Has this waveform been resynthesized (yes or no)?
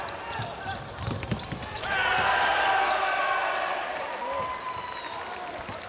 no